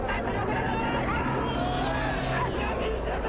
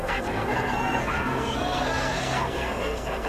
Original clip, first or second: first